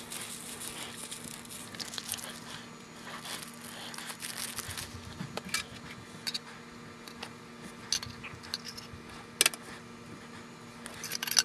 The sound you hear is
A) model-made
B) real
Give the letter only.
B